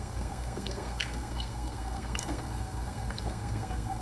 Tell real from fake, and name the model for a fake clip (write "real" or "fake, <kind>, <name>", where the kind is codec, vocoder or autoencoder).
fake, codec, SNAC